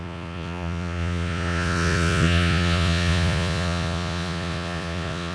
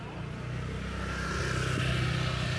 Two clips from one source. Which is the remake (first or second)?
first